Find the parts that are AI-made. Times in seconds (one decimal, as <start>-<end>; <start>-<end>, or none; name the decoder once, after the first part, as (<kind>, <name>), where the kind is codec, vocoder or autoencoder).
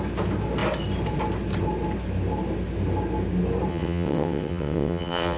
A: 3.7-5.4 (vocoder, WaveNeXt)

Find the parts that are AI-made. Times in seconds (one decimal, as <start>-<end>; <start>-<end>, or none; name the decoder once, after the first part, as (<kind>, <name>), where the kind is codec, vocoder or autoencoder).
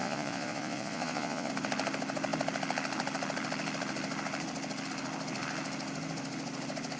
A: 0.0-1.5 (vocoder, Vocos)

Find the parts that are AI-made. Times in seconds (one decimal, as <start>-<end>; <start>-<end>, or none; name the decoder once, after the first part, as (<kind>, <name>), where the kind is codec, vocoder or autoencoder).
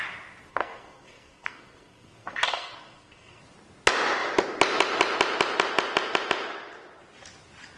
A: 0.5-3.4 (codec, SNAC)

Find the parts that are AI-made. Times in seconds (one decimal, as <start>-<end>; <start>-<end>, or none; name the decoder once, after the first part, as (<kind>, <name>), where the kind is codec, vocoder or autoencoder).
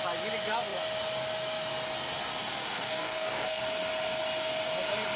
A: 2.6-3.6 (codec, DAC)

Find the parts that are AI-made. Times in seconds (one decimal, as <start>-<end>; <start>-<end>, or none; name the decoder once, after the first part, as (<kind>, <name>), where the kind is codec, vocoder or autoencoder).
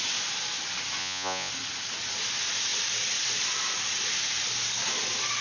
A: 1.0-1.5 (vocoder, Vocos)